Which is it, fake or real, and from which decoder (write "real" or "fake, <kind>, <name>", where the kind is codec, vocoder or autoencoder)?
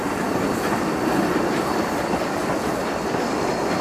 fake, vocoder, BigVGAN v2